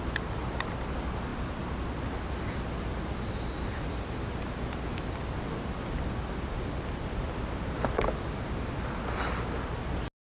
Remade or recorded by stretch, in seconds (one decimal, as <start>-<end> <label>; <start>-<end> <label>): 0.0-10.3 recorded

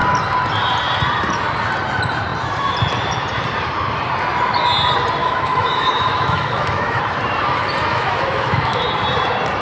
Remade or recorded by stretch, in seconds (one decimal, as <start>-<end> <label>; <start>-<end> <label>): 0.0-5.2 recorded; 5.2-7.0 remade; 7.0-7.9 recorded; 7.9-8.8 remade; 8.8-9.6 recorded

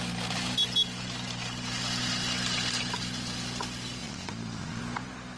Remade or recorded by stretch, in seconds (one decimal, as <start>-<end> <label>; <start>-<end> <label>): 0.0-4.0 recorded; 4.0-4.8 remade; 4.8-5.4 recorded

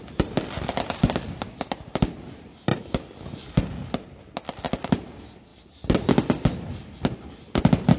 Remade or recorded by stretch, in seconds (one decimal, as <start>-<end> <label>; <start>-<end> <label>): 0.0-8.0 recorded